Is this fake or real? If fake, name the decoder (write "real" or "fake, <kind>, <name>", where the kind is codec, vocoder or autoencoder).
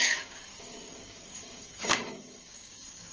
fake, codec, DAC